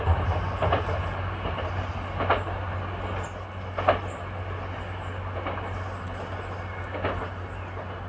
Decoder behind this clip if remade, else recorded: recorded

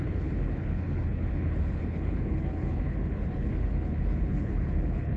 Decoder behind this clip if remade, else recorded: remade, codec, HILCodec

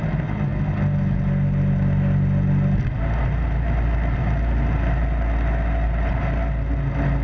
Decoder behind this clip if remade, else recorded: recorded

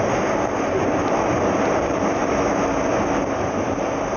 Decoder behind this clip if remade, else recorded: recorded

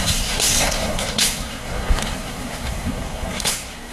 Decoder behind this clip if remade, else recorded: remade, codec, SNAC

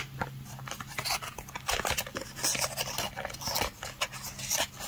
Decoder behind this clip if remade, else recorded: recorded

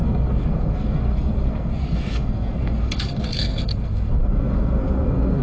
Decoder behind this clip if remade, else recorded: remade, codec, SNAC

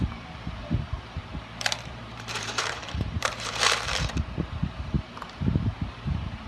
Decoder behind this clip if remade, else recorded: remade, vocoder, BigVGAN v2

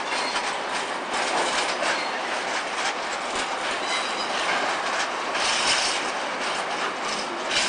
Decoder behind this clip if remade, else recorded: recorded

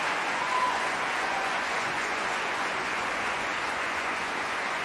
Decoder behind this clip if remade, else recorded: remade, vocoder, Vocos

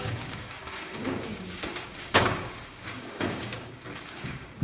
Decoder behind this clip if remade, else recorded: remade, codec, DAC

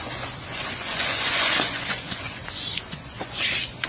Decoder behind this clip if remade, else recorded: remade, vocoder, Vocos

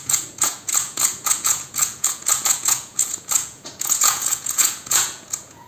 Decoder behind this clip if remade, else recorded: remade, vocoder, Vocos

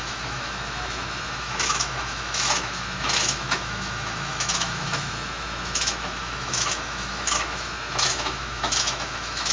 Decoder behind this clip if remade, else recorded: remade, autoencoder, DAC-VAE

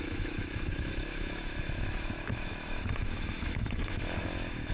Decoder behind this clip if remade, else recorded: remade, autoencoder, DAC-VAE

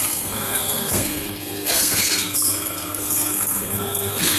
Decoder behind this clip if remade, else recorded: remade, codec, SNAC